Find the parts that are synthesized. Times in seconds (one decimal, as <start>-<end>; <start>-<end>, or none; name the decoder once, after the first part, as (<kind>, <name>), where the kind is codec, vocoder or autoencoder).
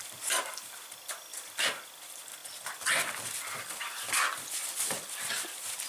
none